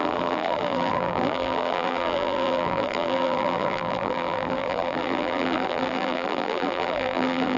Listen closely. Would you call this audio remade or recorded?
remade